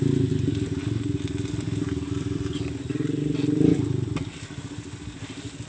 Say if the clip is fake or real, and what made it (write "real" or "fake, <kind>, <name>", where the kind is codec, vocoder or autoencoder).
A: real